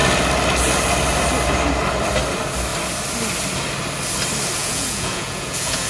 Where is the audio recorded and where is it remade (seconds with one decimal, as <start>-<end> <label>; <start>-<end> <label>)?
0.0-4.6 recorded; 4.6-5.9 remade